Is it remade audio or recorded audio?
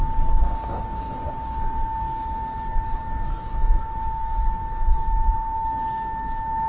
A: remade